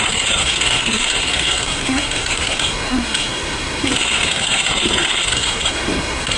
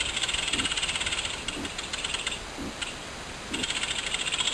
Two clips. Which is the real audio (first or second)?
second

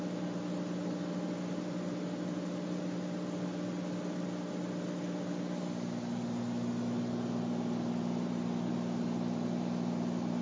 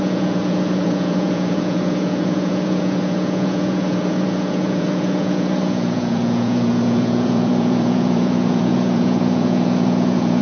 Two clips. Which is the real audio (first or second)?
first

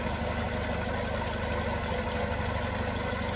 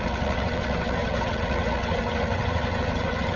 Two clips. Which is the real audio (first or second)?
first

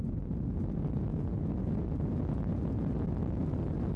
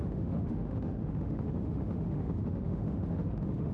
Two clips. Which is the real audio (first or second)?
first